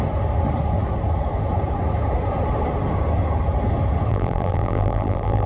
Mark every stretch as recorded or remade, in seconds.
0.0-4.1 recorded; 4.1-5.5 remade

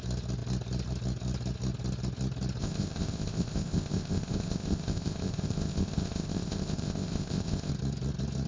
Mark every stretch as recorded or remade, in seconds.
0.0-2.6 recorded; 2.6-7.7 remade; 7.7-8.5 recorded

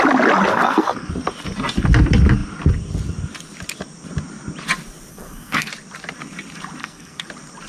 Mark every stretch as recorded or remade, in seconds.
0.0-0.5 recorded; 0.5-1.1 remade; 1.1-5.1 recorded; 5.1-5.7 remade; 5.7-6.8 recorded; 6.8-7.3 remade; 7.3-7.7 recorded

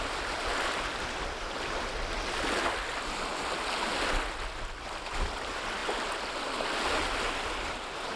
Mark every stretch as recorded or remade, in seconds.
0.0-8.2 recorded